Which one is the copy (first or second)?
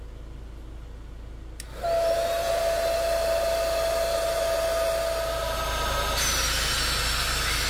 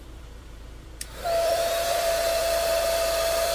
second